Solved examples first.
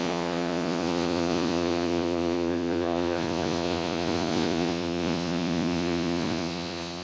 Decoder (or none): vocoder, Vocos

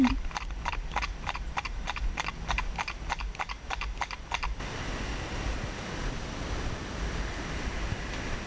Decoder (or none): none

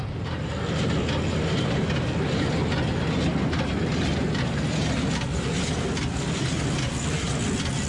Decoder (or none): none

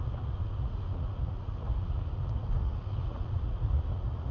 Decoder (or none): vocoder, Vocos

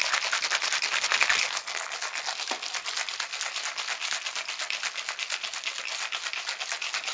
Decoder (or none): none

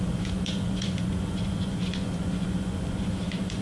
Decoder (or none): vocoder, Vocos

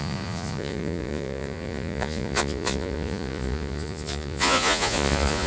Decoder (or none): vocoder, Vocos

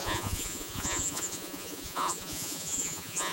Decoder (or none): vocoder, Vocos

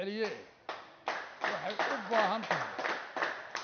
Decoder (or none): none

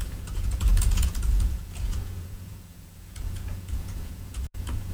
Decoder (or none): vocoder, Vocos